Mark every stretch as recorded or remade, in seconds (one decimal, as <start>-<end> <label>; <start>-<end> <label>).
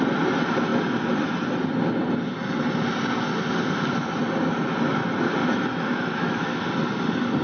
0.0-5.4 recorded; 5.4-6.6 remade; 6.6-7.4 recorded